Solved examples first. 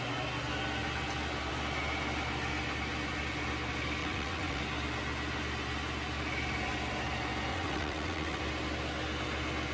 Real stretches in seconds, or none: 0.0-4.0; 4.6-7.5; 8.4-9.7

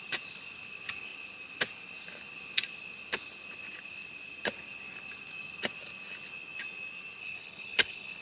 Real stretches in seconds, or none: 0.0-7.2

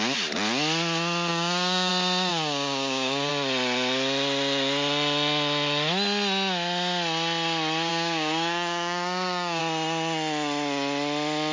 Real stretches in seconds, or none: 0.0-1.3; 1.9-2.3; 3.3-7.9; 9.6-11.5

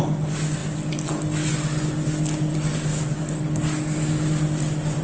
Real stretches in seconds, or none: 0.0-2.9; 4.3-5.0